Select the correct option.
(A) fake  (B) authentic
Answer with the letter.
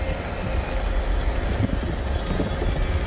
B